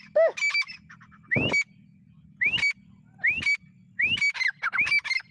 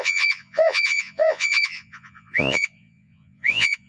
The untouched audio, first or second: first